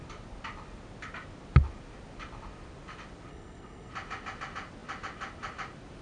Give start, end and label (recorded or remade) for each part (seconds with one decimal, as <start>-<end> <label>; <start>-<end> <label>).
0.0-3.3 recorded; 3.3-3.9 remade; 3.9-6.0 recorded